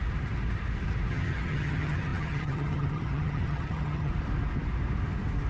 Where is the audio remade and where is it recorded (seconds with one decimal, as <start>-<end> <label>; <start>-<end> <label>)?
0.0-1.1 recorded; 1.1-4.1 remade; 4.1-5.5 recorded